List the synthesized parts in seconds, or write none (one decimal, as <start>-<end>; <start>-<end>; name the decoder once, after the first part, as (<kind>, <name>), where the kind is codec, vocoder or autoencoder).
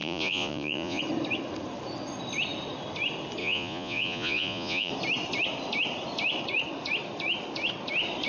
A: 0.0-1.0 (vocoder, Vocos); 3.4-4.9